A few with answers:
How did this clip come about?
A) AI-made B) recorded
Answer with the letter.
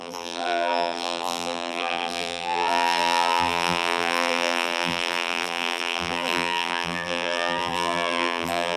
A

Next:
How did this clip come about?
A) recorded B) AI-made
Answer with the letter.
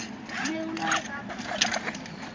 A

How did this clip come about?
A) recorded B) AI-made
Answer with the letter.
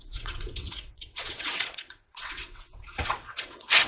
B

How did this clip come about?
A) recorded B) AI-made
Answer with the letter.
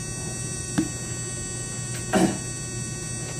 A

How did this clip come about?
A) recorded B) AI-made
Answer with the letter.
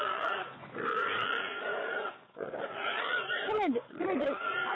B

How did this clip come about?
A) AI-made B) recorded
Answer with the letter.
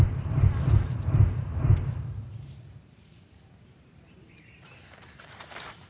A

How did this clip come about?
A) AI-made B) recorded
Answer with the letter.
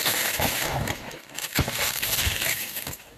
A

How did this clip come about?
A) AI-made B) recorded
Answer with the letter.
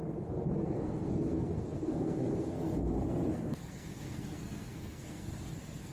A